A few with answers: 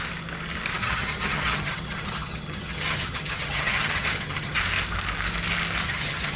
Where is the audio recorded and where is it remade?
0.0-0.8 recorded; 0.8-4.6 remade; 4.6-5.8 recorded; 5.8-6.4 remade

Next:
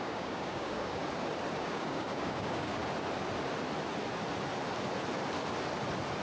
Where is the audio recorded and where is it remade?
0.0-1.0 remade; 1.0-1.5 recorded; 1.5-2.8 remade; 2.8-6.2 recorded

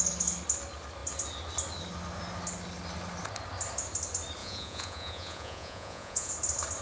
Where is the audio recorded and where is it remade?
0.0-4.4 recorded; 4.4-6.3 remade; 6.3-6.8 recorded

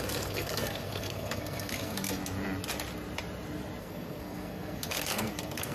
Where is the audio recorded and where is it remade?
0.0-2.2 remade; 2.2-3.8 recorded; 3.8-5.7 remade

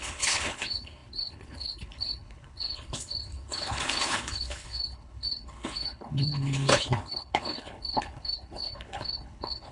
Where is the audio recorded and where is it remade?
0.0-9.7 remade

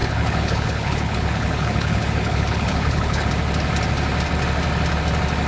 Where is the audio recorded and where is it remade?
0.0-3.3 remade; 3.3-5.5 recorded

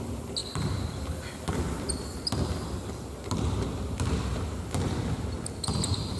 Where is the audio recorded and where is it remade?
0.0-6.2 recorded